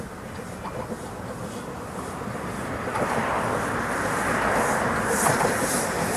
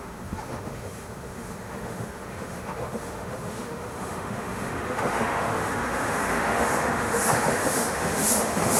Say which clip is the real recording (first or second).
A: first